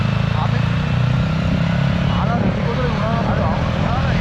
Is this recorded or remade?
recorded